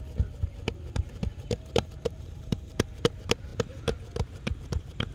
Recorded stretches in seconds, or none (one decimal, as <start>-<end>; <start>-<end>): 0.0-1.3; 3.0-5.1